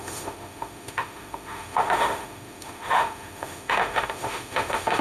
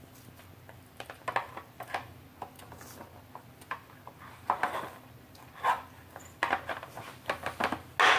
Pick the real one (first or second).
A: second